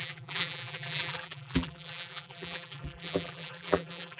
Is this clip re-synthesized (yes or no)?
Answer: yes